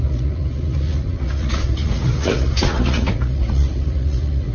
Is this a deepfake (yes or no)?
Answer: yes